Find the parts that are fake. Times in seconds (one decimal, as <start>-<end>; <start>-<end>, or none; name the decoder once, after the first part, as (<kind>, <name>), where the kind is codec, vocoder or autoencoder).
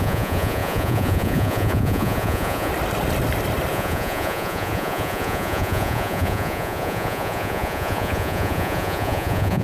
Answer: 0.0-2.7 (vocoder, Vocos); 3.7-9.6